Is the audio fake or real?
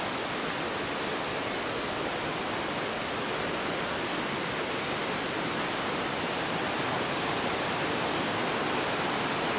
real